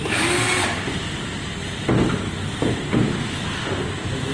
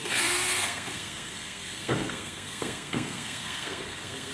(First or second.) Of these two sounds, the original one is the first